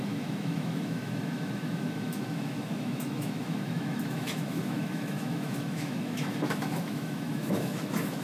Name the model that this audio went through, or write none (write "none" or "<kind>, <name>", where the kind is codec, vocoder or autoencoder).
autoencoder, DAC-VAE